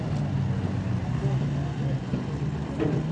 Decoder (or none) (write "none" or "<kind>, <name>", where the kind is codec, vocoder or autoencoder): none